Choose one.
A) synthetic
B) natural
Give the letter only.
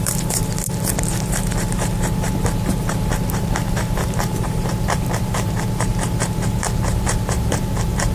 A